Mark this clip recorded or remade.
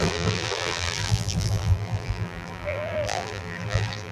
remade